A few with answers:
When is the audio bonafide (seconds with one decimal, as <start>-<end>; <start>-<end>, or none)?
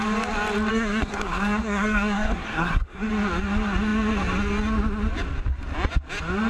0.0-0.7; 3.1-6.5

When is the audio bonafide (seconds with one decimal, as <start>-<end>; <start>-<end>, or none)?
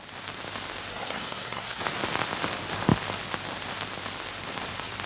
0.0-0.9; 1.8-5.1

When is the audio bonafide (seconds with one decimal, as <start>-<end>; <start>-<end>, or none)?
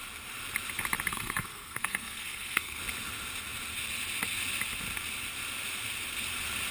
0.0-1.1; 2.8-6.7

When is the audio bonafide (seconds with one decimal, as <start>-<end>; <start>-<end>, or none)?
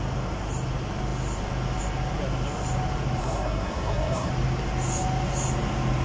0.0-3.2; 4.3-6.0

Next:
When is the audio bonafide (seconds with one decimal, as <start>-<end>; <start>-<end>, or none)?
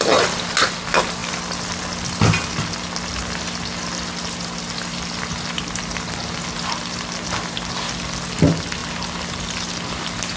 0.0-10.4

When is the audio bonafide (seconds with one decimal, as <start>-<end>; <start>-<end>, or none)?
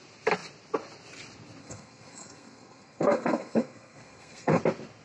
0.0-1.6; 4.6-5.0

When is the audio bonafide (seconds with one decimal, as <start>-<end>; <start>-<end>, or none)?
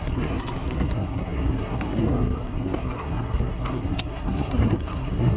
none